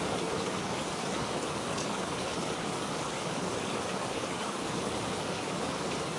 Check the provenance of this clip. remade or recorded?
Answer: remade